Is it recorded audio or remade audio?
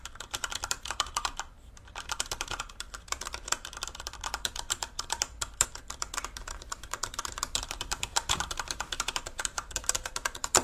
remade